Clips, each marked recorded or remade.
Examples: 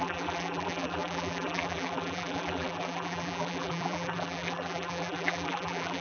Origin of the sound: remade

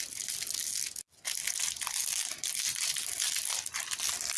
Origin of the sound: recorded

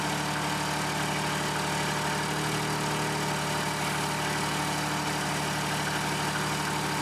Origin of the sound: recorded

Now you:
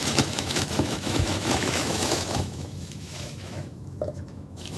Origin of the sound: remade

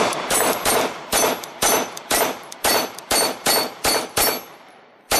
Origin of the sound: remade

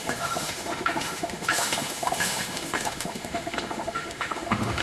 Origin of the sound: remade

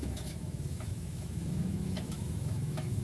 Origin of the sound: remade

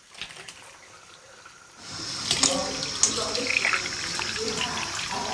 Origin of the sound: recorded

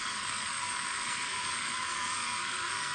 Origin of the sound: remade